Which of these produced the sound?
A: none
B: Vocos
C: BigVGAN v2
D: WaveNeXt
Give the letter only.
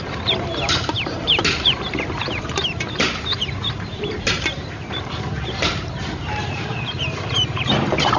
C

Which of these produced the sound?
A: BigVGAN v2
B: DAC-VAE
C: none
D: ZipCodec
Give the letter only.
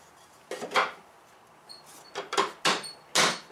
C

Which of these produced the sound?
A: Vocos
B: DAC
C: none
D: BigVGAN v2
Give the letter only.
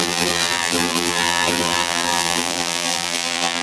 D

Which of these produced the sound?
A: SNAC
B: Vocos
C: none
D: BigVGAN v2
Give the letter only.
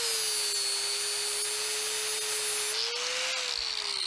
C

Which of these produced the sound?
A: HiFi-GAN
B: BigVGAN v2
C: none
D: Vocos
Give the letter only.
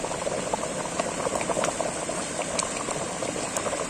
C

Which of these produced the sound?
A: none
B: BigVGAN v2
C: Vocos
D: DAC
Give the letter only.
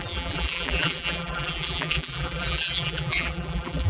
B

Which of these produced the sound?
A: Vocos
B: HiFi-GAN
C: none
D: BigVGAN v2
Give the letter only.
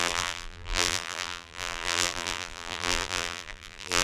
D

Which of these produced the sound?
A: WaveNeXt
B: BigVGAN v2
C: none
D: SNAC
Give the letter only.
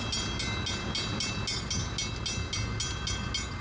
C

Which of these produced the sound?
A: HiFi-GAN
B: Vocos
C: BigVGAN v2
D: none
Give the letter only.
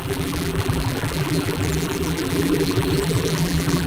C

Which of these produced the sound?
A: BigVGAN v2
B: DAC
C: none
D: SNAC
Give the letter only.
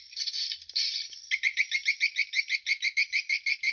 A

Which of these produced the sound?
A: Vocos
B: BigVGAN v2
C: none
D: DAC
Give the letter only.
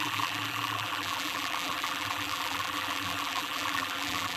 B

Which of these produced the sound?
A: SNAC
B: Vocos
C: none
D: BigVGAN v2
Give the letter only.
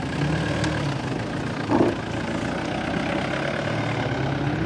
C